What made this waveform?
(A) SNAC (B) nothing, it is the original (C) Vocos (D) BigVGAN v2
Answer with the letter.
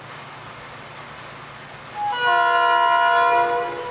B